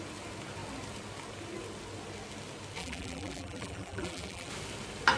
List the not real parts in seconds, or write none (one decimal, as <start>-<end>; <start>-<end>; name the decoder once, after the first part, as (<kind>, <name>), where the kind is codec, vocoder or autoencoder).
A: 2.8-4.5 (vocoder, BigVGAN v2)